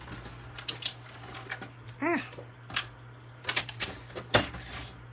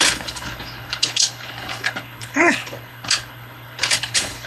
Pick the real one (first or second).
first